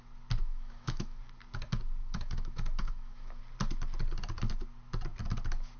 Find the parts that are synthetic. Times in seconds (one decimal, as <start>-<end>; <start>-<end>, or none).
0.4-1.2; 2.0-3.4